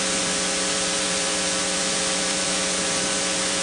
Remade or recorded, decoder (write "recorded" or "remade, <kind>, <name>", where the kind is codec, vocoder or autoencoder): remade, vocoder, Vocos